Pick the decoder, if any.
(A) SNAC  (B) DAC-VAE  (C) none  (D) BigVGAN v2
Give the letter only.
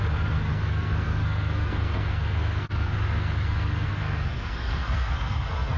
A